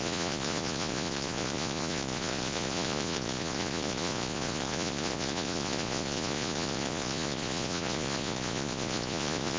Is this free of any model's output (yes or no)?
no